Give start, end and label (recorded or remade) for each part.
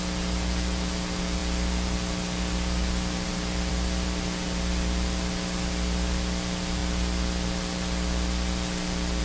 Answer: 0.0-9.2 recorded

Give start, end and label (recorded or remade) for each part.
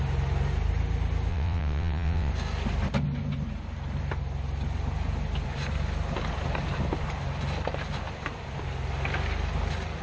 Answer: 0.0-1.3 recorded; 1.3-2.3 remade; 2.3-10.0 recorded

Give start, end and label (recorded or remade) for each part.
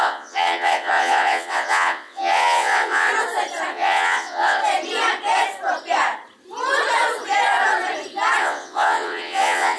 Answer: 0.0-3.1 remade; 3.1-3.7 recorded; 3.7-4.6 remade; 4.6-8.4 recorded; 8.4-9.8 remade